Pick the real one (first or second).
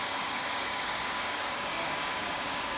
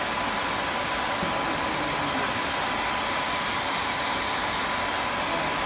second